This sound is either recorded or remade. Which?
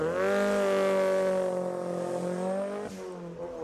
recorded